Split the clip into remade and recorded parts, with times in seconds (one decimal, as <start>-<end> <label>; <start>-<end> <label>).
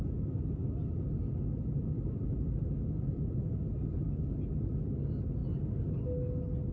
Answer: 0.0-6.7 recorded